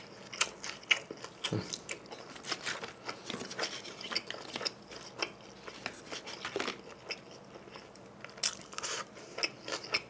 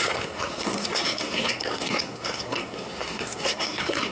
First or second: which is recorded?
first